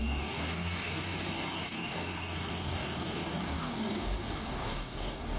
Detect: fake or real fake